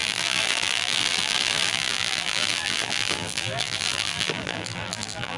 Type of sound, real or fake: fake